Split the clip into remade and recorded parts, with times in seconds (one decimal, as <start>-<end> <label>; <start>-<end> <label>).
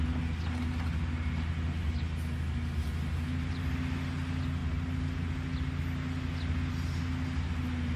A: 0.0-8.0 recorded